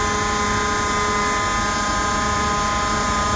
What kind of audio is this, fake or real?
real